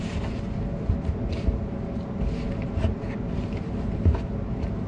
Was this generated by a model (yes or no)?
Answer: no